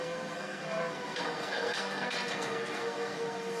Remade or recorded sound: remade